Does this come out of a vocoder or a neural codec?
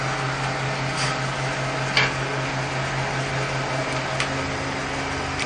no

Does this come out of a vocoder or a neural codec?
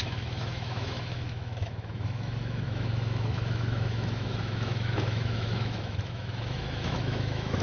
yes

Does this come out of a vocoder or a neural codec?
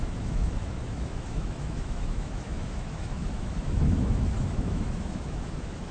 yes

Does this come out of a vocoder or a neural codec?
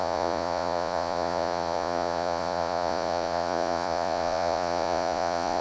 yes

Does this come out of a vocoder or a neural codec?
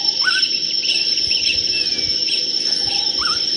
no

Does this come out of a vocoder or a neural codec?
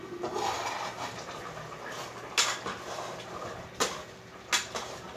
no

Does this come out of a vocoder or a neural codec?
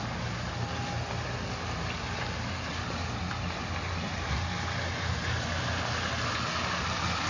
no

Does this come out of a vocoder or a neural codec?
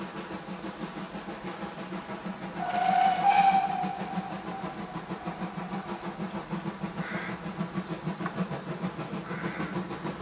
no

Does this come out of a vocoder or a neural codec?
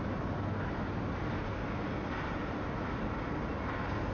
no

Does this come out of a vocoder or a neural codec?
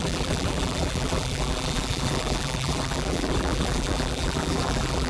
yes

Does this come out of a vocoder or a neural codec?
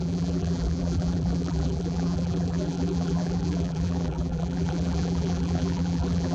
yes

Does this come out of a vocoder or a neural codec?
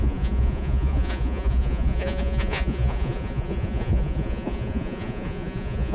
yes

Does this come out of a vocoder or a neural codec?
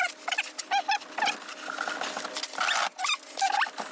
no